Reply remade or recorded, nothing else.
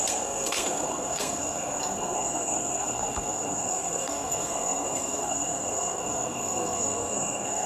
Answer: remade